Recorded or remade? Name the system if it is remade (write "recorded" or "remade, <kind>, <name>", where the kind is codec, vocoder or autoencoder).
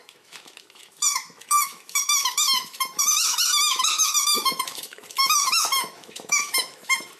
remade, autoencoder, DAC-VAE